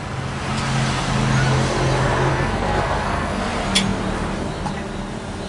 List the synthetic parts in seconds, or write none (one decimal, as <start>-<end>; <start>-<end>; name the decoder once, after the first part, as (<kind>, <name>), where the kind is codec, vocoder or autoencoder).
2.3-3.5 (codec, SNAC)